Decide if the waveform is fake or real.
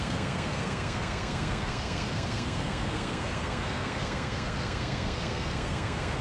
fake